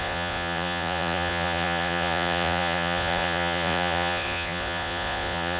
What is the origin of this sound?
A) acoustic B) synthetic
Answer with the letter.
B